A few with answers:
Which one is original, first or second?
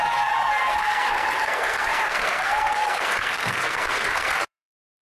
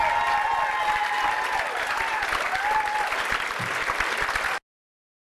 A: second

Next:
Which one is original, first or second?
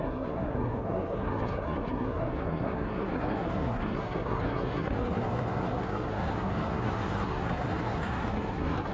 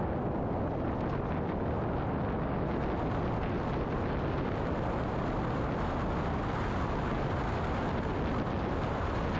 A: second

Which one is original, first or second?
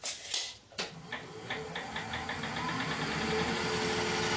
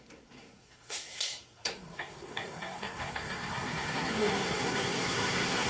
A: first